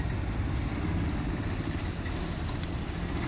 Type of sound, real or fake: real